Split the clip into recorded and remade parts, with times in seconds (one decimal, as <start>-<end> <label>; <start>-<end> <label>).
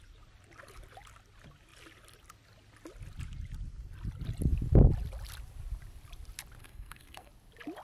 0.0-6.6 recorded; 6.6-7.3 remade; 7.3-7.8 recorded